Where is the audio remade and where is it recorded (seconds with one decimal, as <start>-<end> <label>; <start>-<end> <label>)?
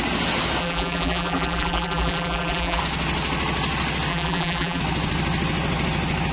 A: 0.0-0.6 recorded; 0.6-2.8 remade; 2.8-4.1 recorded; 4.1-4.8 remade; 4.8-6.3 recorded